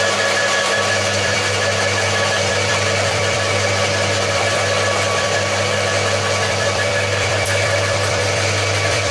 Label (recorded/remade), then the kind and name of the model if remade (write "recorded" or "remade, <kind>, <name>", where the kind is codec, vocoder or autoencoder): remade, vocoder, BigVGAN v2